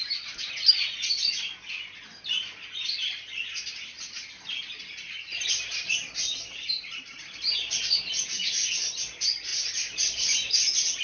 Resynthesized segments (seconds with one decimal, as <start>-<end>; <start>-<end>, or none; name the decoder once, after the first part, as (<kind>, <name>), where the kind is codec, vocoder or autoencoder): 3.0-8.0 (vocoder, BigVGAN v2); 9.5-10.5